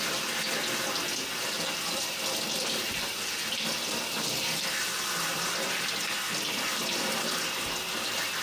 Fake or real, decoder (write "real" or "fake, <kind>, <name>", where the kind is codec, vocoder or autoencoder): fake, vocoder, BigVGAN v2